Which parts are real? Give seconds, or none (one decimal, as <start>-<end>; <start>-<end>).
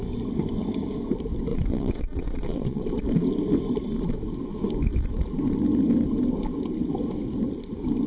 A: 0.0-1.5; 2.8-8.1